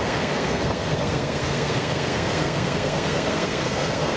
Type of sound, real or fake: fake